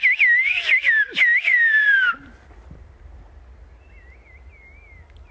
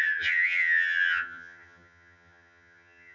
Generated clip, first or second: second